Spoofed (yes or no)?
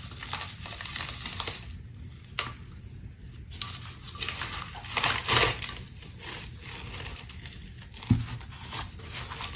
no